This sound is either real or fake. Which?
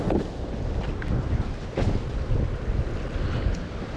real